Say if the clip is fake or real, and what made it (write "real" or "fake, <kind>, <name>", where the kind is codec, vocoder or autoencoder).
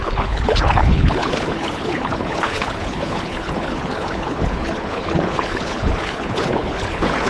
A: fake, codec, HILCodec